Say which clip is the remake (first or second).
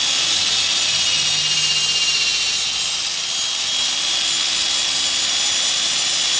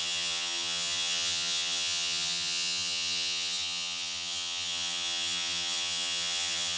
second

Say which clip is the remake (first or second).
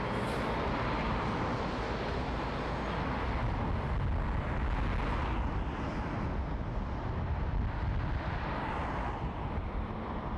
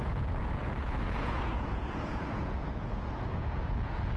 second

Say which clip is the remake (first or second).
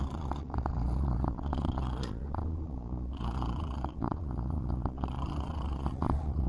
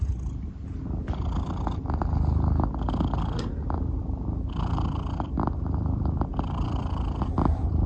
first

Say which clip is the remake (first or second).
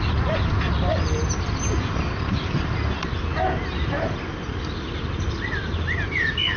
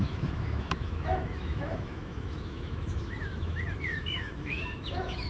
second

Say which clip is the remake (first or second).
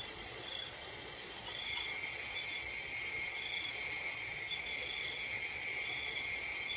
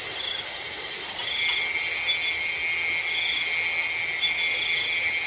first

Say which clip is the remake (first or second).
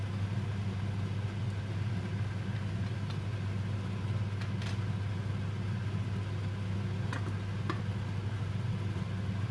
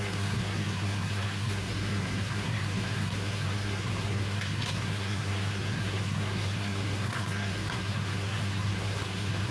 second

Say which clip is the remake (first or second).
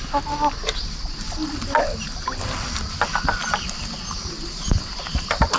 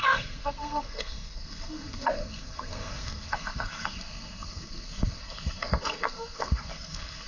second